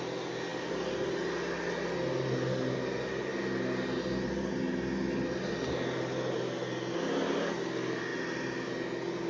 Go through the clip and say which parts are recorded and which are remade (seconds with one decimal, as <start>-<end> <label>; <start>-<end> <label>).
0.0-9.3 recorded